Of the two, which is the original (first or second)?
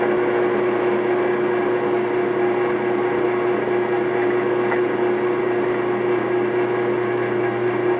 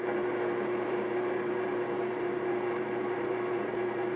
first